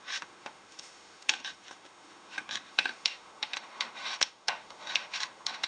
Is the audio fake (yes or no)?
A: yes